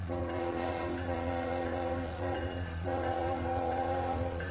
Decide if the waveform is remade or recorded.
remade